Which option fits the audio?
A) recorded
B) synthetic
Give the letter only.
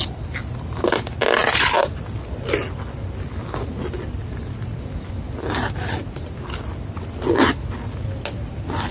A